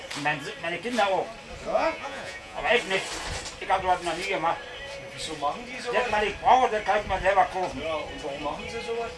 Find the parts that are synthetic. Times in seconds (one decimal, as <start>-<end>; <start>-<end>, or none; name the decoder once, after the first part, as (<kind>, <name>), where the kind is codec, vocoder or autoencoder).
1.7-2.7 (vocoder, Vocos)